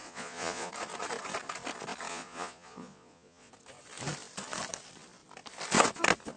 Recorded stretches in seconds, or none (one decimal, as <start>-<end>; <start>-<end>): 0.7-2.1; 3.5-6.4